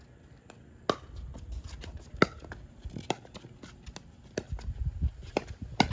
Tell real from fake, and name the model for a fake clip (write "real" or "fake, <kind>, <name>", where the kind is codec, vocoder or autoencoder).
real